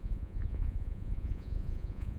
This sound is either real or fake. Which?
fake